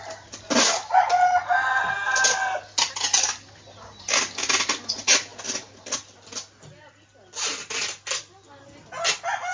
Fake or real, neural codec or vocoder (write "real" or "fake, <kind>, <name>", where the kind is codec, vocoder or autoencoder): real